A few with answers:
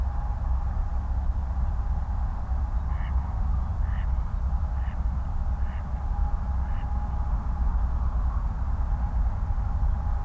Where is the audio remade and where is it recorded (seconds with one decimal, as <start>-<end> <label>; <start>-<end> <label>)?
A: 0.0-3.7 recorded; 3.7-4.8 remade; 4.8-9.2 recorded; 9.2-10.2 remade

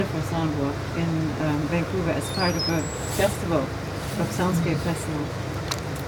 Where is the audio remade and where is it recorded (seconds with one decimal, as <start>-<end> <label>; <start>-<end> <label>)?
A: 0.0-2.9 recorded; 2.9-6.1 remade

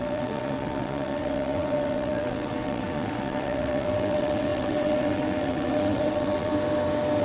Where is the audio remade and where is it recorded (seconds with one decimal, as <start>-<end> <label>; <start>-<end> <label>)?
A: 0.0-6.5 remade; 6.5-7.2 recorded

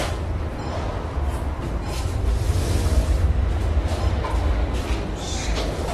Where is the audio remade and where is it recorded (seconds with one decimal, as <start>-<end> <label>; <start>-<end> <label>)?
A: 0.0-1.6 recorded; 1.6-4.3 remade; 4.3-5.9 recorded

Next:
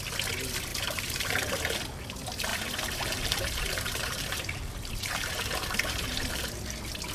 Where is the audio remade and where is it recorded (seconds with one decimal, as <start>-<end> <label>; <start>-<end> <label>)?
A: 0.0-0.7 recorded; 0.7-1.5 remade; 1.5-2.5 recorded; 2.5-6.4 remade; 6.4-7.1 recorded

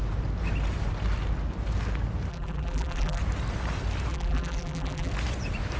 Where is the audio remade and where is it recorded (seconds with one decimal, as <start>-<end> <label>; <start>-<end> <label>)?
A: 0.0-2.3 recorded; 2.3-3.2 remade; 3.2-4.1 recorded; 4.1-5.1 remade; 5.1-5.8 recorded